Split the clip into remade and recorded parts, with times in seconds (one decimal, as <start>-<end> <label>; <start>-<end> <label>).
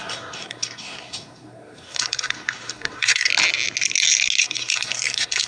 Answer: 0.0-3.3 remade; 3.3-4.4 recorded; 4.4-5.5 remade